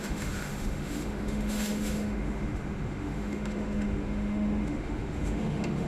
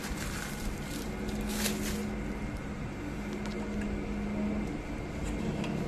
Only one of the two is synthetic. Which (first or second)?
first